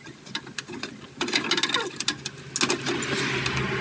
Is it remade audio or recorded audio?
recorded